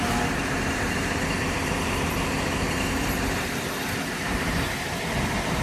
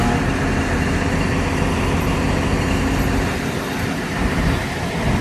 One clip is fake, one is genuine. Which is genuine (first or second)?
second